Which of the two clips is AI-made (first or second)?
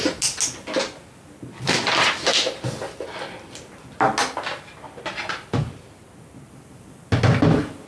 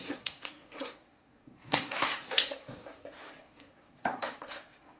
second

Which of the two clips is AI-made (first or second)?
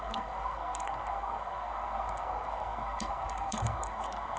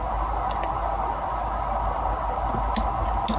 first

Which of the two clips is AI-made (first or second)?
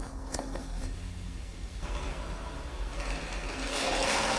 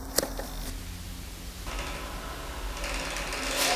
first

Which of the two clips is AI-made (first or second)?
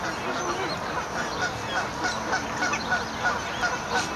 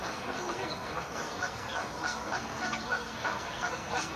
second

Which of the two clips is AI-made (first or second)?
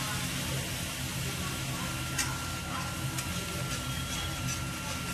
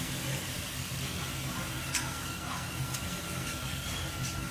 second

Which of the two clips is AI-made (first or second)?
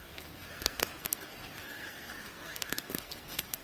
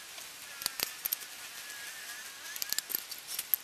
first